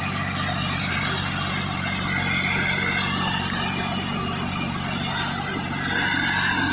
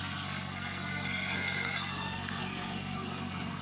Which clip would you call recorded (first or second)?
first